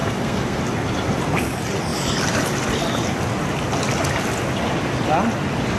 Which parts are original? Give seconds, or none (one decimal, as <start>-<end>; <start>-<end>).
0.6-5.8